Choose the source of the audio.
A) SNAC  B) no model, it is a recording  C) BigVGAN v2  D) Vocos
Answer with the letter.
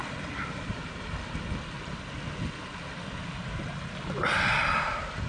B